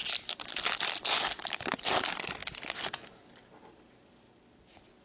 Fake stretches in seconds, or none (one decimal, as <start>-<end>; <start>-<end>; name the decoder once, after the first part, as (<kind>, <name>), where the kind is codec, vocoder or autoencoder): none